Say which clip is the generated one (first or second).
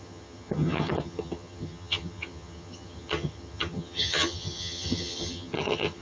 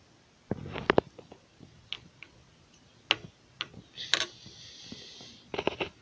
first